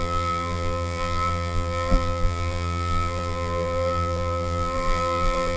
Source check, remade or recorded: remade